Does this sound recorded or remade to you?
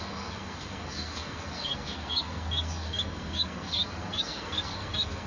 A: remade